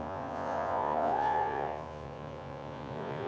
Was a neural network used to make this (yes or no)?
yes